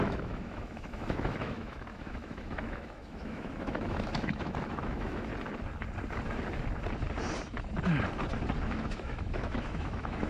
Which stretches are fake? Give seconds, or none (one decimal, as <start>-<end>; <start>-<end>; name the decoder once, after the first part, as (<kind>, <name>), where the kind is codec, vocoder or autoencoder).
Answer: 0.0-5.3 (autoencoder, DAC-VAE); 8.7-10.3